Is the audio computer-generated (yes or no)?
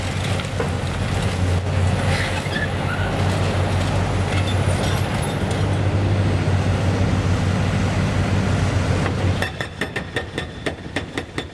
no